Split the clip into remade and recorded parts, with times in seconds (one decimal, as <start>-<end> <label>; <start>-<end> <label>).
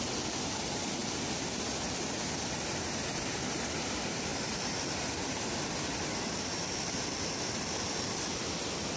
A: 0.0-9.0 recorded